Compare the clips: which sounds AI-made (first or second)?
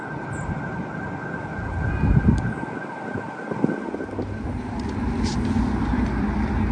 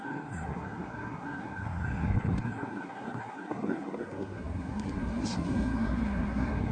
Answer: second